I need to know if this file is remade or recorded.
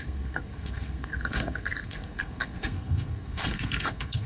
remade